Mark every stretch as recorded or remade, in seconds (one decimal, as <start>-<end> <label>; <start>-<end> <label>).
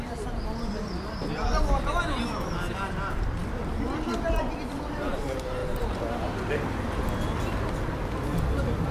0.0-8.9 recorded